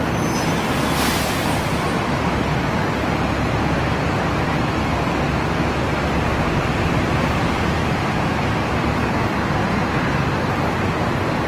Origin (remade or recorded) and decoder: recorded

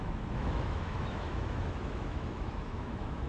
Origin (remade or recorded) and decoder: remade, autoencoder, DAC-VAE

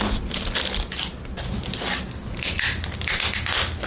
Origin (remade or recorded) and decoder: recorded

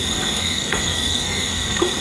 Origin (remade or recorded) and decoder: remade, codec, SNAC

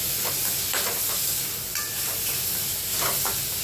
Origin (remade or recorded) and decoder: recorded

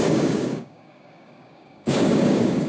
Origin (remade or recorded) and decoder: remade, codec, DAC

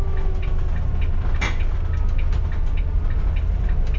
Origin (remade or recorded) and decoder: recorded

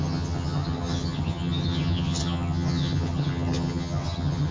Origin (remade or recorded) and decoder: remade, vocoder, HiFi-GAN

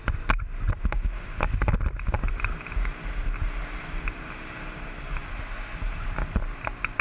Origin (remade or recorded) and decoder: recorded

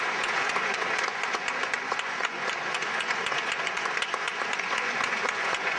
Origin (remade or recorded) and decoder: remade, vocoder, Vocos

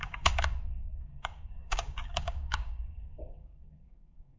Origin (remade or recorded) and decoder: remade, codec, DAC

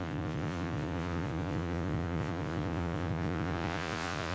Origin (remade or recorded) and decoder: remade, vocoder, Vocos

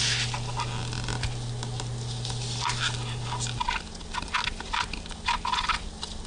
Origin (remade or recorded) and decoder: recorded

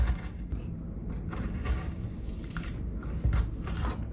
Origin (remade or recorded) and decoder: recorded